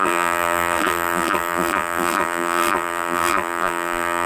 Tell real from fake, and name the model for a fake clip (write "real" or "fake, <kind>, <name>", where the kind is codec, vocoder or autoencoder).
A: fake, vocoder, BigVGAN v2